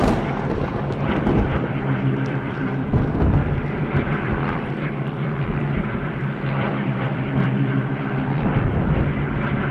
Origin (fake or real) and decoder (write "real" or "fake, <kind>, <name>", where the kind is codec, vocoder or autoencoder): fake, vocoder, BigVGAN v2